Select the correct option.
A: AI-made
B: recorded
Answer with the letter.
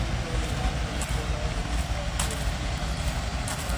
B